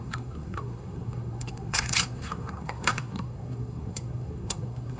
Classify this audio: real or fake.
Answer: fake